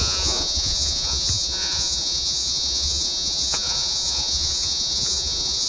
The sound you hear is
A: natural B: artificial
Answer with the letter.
B